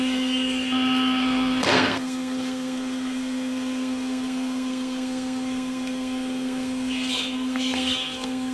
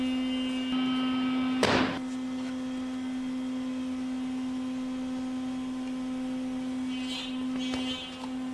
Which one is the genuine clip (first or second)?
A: second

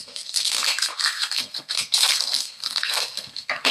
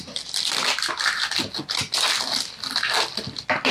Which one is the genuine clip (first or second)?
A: second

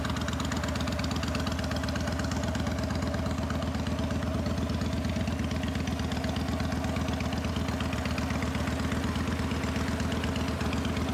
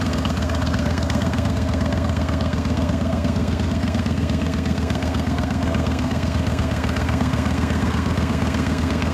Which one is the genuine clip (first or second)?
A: first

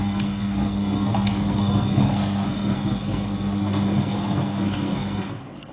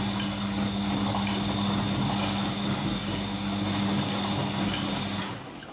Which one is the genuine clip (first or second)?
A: second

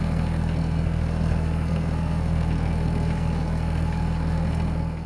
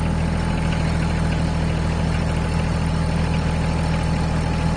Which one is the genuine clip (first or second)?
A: second